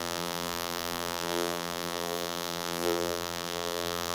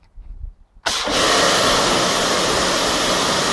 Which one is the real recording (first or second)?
second